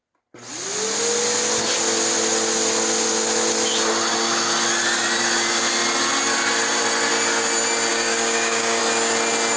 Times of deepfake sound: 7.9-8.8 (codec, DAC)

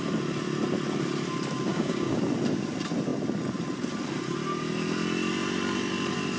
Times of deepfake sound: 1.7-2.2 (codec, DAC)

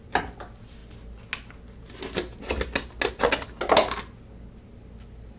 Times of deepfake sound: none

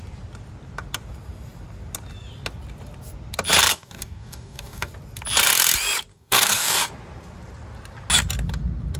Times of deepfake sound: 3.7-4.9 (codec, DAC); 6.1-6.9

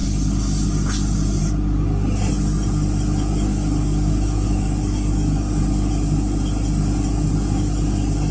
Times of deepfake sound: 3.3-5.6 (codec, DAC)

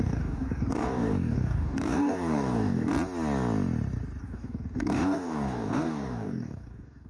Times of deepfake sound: 0.0-2.9 (codec, DAC); 4.2-7.1

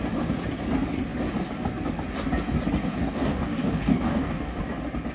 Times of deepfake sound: 2.9-4.6 (codec, DAC)